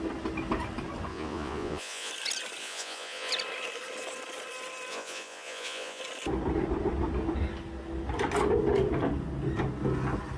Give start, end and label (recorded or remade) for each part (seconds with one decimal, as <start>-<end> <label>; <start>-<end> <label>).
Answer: 0.0-1.1 recorded; 1.1-2.1 remade; 2.1-2.6 recorded; 2.6-3.3 remade; 3.3-4.9 recorded; 4.9-6.0 remade; 6.0-10.4 recorded